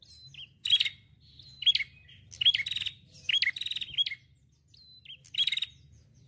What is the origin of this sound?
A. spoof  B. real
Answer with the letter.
B